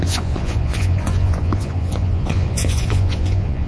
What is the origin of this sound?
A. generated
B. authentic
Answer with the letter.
A